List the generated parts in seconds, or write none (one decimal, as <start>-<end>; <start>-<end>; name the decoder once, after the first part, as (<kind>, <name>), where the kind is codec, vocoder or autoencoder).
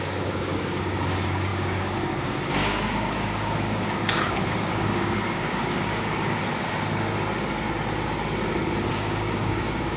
0.0-6.4 (codec, DAC); 8.9-10.0